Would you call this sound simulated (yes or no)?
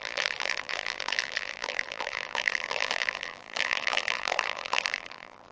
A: yes